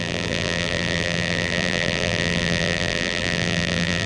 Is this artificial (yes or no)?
yes